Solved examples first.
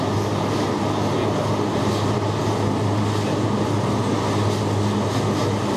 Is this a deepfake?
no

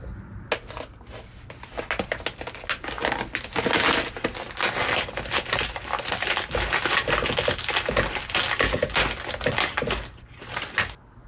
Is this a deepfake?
no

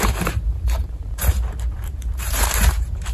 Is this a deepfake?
yes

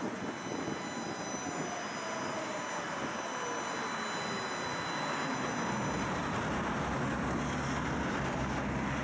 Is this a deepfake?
no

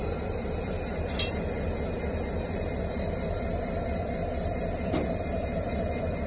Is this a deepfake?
yes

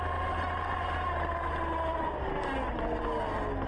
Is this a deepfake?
no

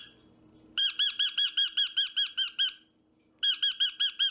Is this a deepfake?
yes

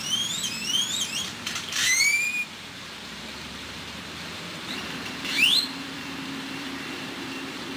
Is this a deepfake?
yes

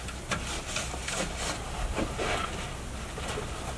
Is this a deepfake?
no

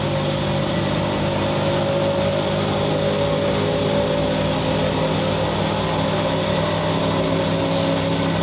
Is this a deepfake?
yes